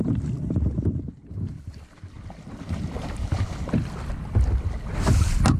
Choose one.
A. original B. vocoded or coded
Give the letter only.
A